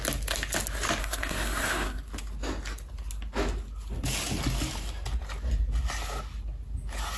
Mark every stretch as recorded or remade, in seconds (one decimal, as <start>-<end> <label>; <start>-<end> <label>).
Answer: 0.0-1.0 recorded; 1.0-2.0 remade; 2.0-7.2 recorded